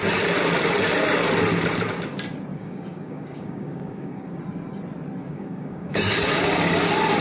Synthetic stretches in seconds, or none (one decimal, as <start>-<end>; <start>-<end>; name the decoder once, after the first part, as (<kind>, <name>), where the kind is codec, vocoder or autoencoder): 2.5-4.4 (codec, DAC); 5.2-6.0